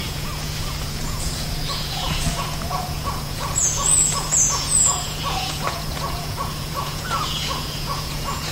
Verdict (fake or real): fake